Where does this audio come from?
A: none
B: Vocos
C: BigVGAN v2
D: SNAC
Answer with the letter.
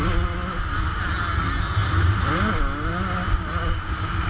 A